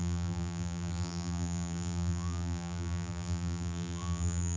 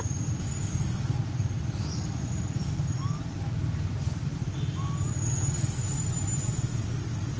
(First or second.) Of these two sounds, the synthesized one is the first